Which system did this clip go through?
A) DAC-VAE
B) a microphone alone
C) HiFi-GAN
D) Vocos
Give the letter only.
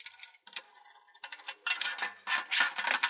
B